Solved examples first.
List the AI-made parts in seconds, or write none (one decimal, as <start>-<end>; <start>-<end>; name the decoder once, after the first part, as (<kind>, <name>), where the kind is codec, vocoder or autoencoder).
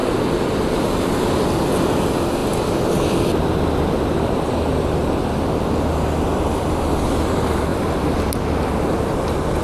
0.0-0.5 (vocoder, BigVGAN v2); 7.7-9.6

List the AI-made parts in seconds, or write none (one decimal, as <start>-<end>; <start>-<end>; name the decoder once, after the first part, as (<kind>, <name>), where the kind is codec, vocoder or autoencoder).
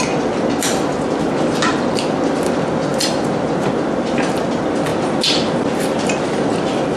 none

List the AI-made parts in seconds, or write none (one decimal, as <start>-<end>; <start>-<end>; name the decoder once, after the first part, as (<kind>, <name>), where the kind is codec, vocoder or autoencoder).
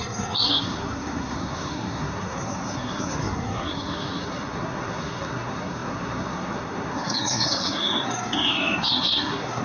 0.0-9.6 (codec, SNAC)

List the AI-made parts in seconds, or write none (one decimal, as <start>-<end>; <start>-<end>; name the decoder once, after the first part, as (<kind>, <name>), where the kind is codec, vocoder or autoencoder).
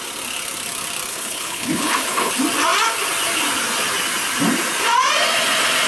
1.1-2.3 (codec, HILCodec)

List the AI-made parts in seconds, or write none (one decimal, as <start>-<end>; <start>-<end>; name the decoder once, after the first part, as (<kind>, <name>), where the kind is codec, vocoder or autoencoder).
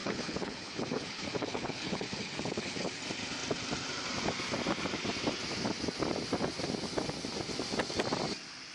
0.0-3.0 (codec, HILCodec)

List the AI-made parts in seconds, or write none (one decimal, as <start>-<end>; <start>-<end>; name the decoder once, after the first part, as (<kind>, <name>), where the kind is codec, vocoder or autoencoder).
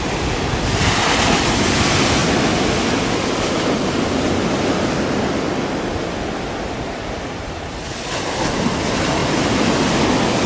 none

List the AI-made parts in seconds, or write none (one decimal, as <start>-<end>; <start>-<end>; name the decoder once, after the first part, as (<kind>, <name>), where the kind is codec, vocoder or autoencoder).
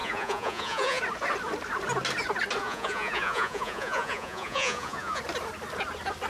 0.0-1.0 (vocoder, Vocos); 2.6-5.2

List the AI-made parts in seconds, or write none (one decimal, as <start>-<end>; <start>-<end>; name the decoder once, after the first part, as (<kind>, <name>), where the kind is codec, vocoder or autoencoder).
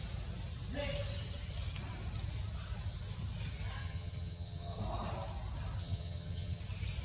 3.8-4.8 (vocoder, HiFi-GAN); 5.8-6.6